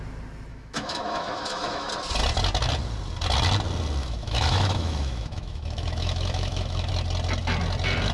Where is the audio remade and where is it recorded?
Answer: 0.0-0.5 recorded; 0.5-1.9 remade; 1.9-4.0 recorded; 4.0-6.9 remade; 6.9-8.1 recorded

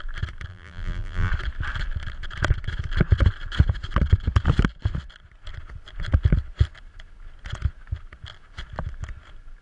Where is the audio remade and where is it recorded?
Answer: 0.0-0.5 recorded; 0.5-1.3 remade; 1.3-9.6 recorded

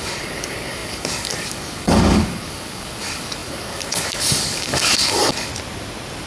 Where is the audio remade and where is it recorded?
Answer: 0.0-5.5 remade; 5.5-6.3 recorded

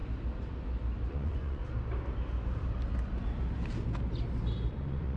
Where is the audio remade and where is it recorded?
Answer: 0.0-1.1 recorded; 1.1-1.6 remade; 1.6-4.7 recorded; 4.7-5.2 remade

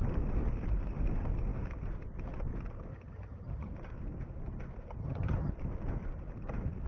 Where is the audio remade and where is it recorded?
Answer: 0.0-2.9 recorded; 2.9-3.7 remade; 3.7-5.0 recorded; 5.0-5.5 remade; 5.5-6.9 recorded